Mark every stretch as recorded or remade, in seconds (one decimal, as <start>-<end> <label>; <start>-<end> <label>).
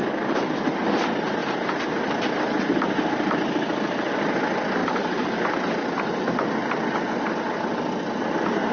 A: 0.0-8.7 recorded